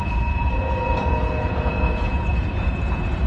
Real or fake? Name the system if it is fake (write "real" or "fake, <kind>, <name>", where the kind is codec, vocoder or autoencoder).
fake, vocoder, Vocos